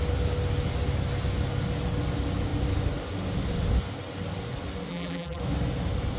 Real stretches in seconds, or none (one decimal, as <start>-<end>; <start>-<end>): 0.0-4.9; 5.4-6.2